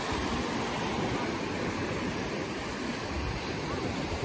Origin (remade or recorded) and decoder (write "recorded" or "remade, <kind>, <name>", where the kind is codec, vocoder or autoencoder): recorded